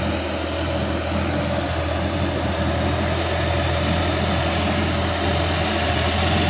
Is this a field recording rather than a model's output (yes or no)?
yes